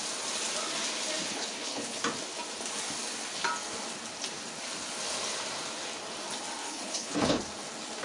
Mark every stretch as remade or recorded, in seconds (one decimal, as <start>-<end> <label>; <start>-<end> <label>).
0.0-1.3 recorded; 1.3-2.0 remade; 2.0-6.6 recorded; 6.6-7.4 remade; 7.4-8.0 recorded